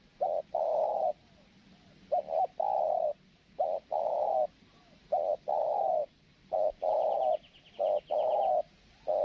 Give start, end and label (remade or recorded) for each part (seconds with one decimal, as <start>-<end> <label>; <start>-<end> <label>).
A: 0.0-9.2 recorded